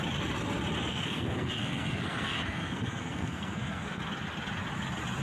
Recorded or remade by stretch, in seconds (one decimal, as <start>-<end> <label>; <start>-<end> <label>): 0.0-0.9 recorded; 0.9-4.0 remade; 4.0-5.2 recorded